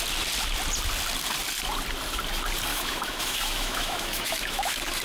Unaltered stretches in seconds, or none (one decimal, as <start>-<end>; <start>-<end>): 0.0-2.7